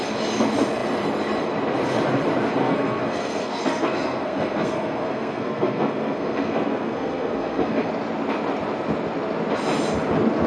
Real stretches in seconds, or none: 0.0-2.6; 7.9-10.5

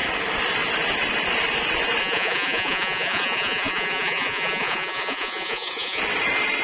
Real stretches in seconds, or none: 0.0-2.0; 6.0-6.6